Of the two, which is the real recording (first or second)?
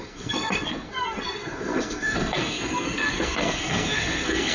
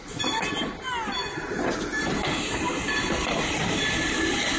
second